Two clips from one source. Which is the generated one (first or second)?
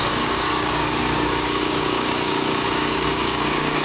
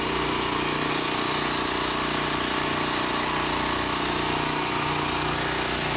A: first